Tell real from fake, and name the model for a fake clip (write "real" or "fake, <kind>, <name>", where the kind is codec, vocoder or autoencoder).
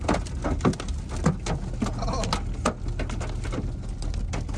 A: real